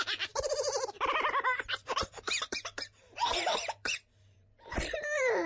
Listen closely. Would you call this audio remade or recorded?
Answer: remade